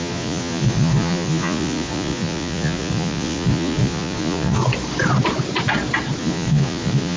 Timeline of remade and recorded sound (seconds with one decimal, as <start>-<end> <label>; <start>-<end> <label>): 0.0-4.6 remade; 4.6-6.2 recorded; 6.2-7.2 remade